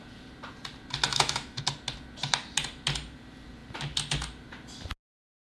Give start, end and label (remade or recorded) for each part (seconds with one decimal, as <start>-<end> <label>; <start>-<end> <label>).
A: 0.0-1.1 recorded; 1.1-1.6 remade; 1.6-5.6 recorded

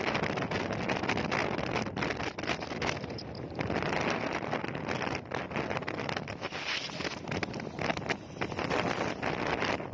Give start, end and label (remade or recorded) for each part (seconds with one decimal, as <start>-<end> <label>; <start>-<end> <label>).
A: 0.0-9.9 recorded

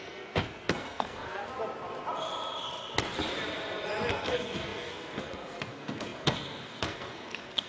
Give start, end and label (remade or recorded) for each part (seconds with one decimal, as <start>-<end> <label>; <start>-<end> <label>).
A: 0.0-1.5 remade; 1.5-4.1 recorded; 4.1-7.7 remade

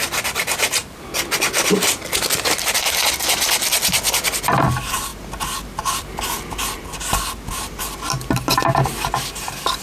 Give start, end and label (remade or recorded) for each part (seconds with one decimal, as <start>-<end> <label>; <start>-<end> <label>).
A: 0.0-0.8 remade; 0.8-4.5 recorded; 4.5-5.1 remade; 5.1-7.8 recorded; 7.8-9.8 remade

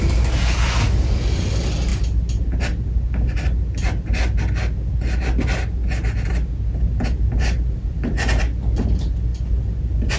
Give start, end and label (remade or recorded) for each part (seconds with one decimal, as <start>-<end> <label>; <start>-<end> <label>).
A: 0.0-10.2 recorded

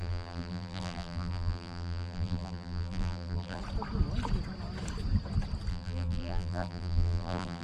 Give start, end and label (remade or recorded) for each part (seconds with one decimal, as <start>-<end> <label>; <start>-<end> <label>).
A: 0.0-3.6 remade; 3.6-5.7 recorded; 5.7-7.6 remade

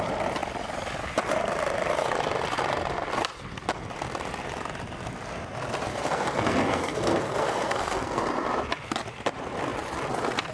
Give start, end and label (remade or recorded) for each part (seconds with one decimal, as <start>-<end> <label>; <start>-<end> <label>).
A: 0.0-5.9 recorded; 5.9-8.2 remade; 8.2-10.5 recorded